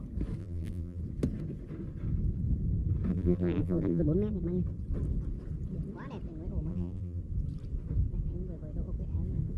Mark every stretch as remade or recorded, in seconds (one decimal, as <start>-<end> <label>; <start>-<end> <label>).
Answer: 0.0-0.4 recorded; 0.4-1.0 remade; 1.0-3.1 recorded; 3.1-4.0 remade; 4.0-6.7 recorded; 6.7-7.2 remade; 7.2-9.6 recorded